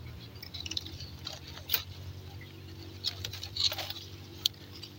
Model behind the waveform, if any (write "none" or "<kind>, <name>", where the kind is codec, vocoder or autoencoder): vocoder, BigVGAN v2